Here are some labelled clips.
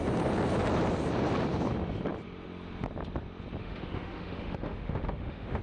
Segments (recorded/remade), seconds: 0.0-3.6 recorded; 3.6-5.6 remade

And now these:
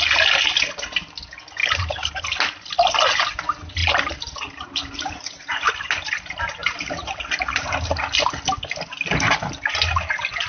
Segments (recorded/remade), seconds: 0.0-1.6 recorded; 1.6-2.2 remade; 2.2-3.8 recorded; 3.8-5.7 remade; 5.7-6.6 recorded; 6.6-7.9 remade; 7.9-10.5 recorded

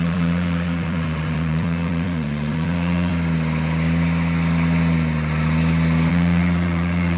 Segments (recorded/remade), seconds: 0.0-3.1 remade; 3.1-6.1 recorded; 6.1-7.2 remade